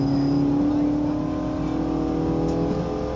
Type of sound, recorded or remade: recorded